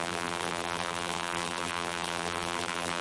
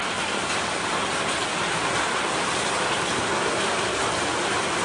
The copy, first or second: first